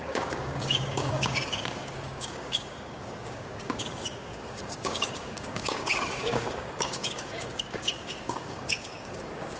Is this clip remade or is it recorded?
remade